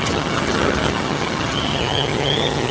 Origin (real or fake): fake